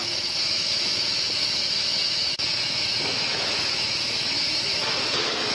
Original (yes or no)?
no